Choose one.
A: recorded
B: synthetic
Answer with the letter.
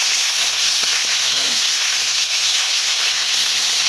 B